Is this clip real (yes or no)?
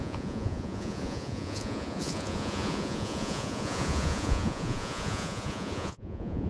no